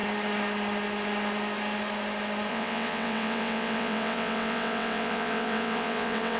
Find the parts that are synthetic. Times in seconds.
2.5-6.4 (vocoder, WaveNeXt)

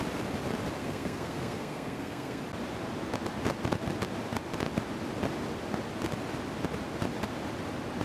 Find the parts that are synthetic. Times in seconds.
0.8-2.4 (codec, SNAC)

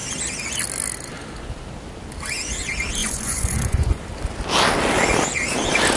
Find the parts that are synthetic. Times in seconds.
3.0-4.0 (vocoder, Vocos)

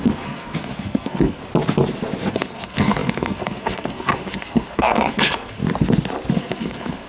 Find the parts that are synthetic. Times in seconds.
0.0-1.4 (codec, SNAC); 2.3-5.6; 6.3-7.1

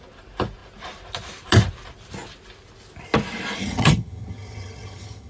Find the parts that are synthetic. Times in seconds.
3.6-5.3 (vocoder, HiFi-GAN)

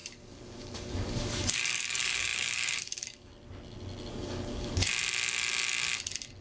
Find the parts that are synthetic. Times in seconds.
0.0-3.3 (codec, DAC); 4.1-4.9

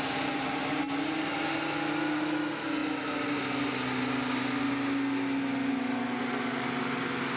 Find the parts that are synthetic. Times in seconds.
none